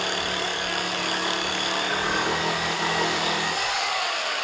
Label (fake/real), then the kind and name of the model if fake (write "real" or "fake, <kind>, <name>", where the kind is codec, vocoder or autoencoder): fake, codec, DAC